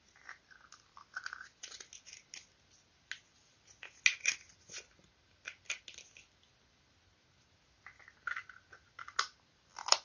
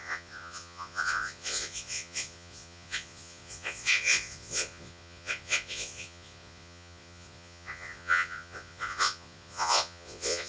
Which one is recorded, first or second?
first